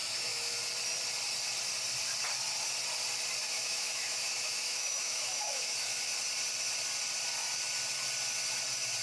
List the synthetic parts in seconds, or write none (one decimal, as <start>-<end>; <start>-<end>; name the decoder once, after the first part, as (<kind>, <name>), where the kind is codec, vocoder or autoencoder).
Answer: 0.0-0.6 (autoencoder, DAC-VAE); 3.4-6.0